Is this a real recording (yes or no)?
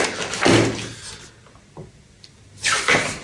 yes